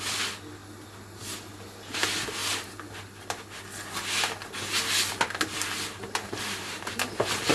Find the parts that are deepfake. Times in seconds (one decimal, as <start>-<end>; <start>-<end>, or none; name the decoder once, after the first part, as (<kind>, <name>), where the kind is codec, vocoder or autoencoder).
none